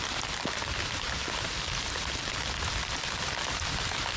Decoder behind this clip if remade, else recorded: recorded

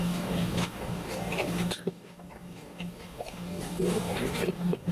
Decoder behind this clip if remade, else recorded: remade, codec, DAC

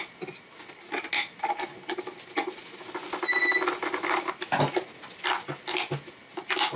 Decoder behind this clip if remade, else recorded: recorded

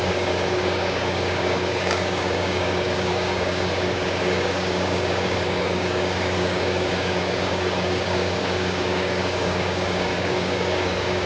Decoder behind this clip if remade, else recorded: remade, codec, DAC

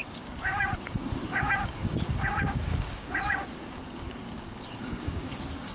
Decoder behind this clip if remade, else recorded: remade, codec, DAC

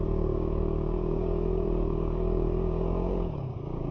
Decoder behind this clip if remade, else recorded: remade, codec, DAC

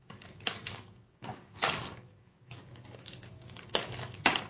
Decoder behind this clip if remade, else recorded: remade, codec, DAC